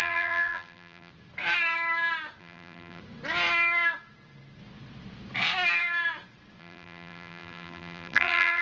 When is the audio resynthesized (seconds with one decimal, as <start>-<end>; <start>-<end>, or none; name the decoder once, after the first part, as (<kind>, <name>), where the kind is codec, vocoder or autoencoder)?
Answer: 0.0-1.1 (vocoder, BigVGAN v2); 2.4-3.0; 6.6-8.6